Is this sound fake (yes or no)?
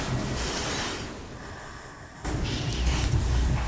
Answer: no